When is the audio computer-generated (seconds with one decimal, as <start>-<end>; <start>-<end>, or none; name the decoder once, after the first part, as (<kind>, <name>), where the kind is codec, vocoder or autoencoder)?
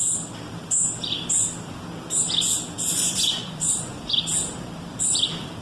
2.9-4.1 (vocoder, Vocos)